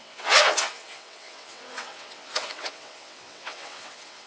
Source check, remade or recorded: remade